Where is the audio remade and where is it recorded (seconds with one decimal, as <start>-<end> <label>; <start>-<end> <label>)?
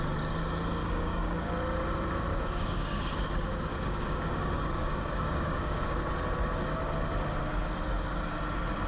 0.0-0.8 recorded; 0.8-1.5 remade; 1.5-2.3 recorded; 2.3-3.0 remade; 3.0-3.7 recorded; 3.7-6.1 remade; 6.1-8.9 recorded